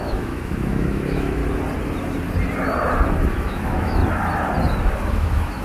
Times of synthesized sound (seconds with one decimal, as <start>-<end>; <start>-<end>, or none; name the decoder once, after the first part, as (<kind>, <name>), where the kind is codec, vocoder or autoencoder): 0.0-1.4 (autoencoder, DAC-VAE); 3.3-4.0; 5.1-5.6